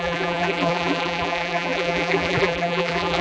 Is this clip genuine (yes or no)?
no